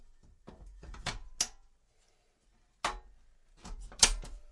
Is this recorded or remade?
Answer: recorded